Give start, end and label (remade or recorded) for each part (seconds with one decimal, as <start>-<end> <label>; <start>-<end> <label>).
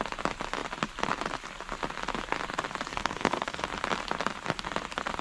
0.0-2.9 recorded; 2.9-3.6 remade; 3.6-5.2 recorded